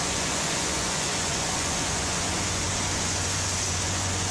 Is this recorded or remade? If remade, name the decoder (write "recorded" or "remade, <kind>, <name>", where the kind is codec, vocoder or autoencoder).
remade, vocoder, Vocos